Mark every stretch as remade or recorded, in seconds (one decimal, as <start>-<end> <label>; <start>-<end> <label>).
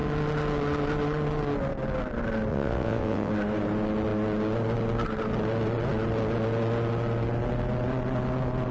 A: 0.0-2.5 recorded; 2.5-3.3 remade; 3.3-8.7 recorded